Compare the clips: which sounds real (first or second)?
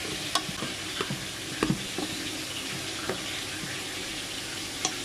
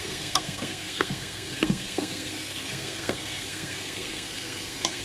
first